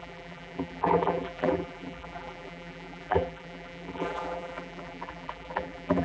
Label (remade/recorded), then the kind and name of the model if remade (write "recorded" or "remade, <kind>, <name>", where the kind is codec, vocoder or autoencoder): remade, vocoder, BigVGAN v2